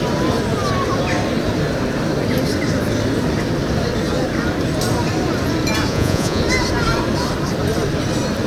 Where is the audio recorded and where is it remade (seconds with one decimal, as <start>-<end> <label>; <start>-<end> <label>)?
0.0-5.9 recorded; 5.9-6.4 remade; 6.4-8.5 recorded